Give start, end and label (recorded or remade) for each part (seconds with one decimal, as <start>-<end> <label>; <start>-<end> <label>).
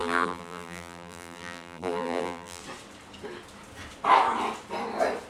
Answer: 0.0-2.6 remade; 2.6-5.3 recorded